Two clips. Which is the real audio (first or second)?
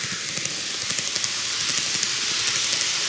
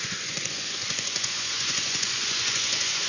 first